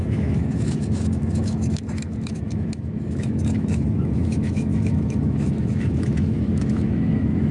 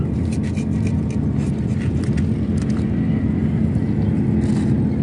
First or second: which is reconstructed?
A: first